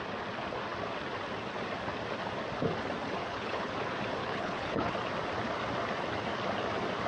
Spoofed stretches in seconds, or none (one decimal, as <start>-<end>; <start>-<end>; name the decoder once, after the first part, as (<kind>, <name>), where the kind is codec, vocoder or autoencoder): 3.2-3.7 (codec, HILCodec); 4.2-4.9